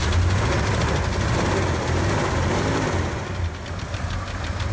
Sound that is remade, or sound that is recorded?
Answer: recorded